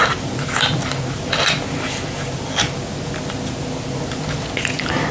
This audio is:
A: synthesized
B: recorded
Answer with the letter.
B